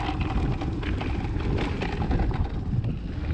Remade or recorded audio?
recorded